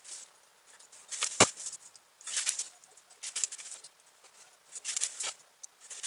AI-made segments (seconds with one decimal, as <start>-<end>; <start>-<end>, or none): none